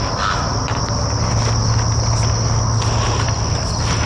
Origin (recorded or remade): recorded